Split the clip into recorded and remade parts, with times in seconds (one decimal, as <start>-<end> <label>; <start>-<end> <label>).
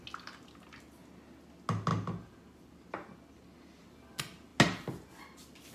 0.0-5.7 recorded